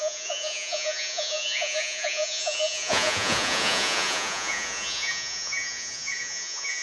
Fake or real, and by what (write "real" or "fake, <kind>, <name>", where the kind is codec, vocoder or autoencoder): fake, vocoder, Vocos